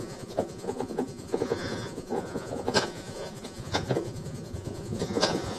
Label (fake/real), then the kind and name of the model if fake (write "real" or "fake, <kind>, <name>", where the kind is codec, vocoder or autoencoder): fake, vocoder, Vocos